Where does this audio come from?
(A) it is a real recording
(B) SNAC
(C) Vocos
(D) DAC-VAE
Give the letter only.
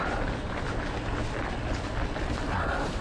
A